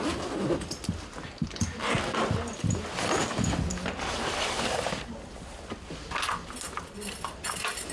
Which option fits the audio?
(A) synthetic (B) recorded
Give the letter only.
B